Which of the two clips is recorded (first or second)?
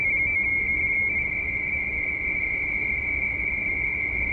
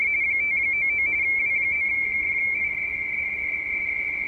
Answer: first